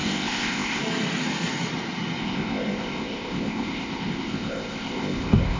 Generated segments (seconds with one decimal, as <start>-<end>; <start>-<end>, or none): 0.0-0.8; 2.2-5.6